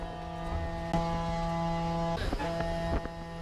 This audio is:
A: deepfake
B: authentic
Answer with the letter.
B